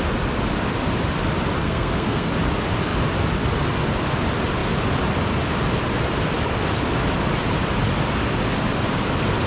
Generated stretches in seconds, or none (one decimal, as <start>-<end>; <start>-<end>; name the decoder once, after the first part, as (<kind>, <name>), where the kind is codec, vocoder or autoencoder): 1.6-2.3 (codec, SNAC)